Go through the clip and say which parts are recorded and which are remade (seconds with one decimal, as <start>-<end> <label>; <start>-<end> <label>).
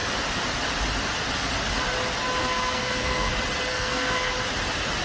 0.0-2.4 recorded; 2.4-3.3 remade; 3.3-3.7 recorded; 3.7-4.3 remade; 4.3-5.0 recorded